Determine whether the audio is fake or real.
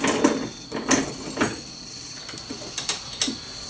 real